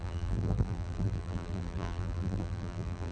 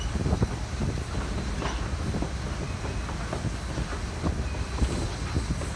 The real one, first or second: second